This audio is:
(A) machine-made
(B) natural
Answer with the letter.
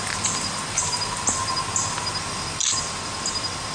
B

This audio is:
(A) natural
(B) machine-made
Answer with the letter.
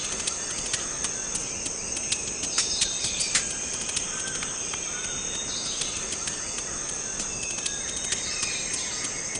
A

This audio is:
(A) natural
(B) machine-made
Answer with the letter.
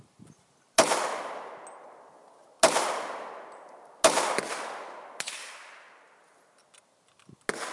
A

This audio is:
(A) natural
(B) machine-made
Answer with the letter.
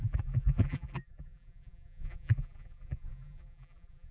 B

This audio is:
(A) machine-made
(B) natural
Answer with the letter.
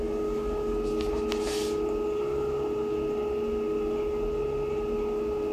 B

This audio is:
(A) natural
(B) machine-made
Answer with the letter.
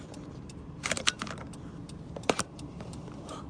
B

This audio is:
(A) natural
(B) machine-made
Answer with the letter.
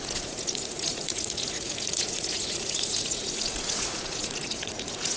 B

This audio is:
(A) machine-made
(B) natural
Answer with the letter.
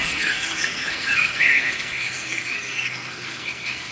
A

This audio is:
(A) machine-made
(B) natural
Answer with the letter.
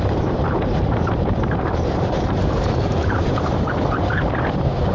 A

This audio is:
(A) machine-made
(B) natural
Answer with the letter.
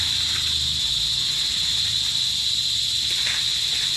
B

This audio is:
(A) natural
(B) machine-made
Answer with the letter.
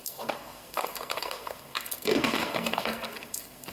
B